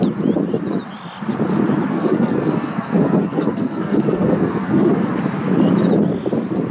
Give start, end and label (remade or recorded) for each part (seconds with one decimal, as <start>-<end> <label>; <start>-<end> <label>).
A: 0.0-1.9 recorded; 1.9-5.1 remade; 5.1-6.7 recorded